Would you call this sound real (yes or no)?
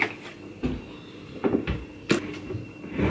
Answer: yes